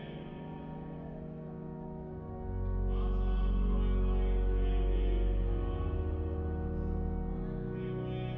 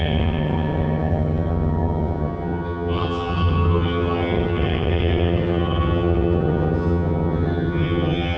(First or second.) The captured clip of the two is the first